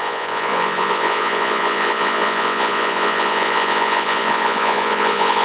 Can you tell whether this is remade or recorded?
remade